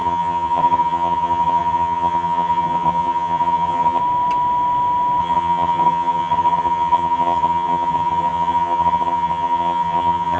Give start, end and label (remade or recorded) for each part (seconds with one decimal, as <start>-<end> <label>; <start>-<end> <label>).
0.0-4.0 remade; 4.0-5.2 recorded; 5.2-10.4 remade